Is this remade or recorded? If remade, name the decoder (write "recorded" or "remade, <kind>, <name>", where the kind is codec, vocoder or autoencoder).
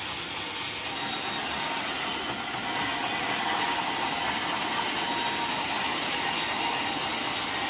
recorded